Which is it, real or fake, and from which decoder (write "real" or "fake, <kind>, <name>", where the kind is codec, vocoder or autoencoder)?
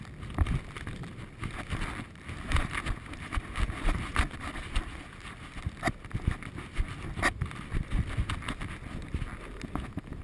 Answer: real